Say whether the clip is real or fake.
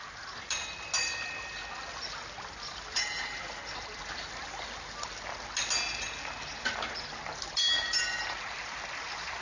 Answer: real